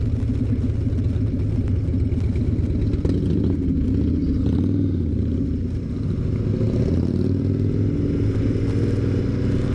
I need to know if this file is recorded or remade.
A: recorded